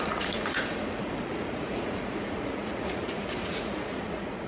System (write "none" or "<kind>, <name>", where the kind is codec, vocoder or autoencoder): vocoder, Vocos